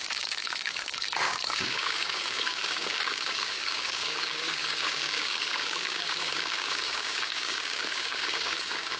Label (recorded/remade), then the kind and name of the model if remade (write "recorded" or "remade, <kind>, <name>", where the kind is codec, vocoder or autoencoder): remade, codec, DAC